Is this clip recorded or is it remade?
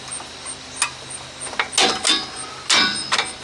recorded